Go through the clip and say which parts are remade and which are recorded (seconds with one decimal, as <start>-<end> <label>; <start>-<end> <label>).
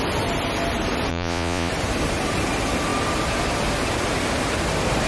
0.0-1.1 recorded; 1.1-1.7 remade; 1.7-5.1 recorded